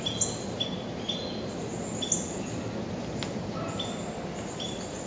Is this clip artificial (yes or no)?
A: no